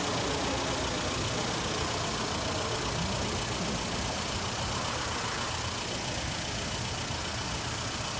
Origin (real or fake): real